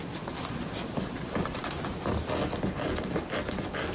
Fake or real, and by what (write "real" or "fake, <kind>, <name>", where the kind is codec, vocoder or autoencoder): real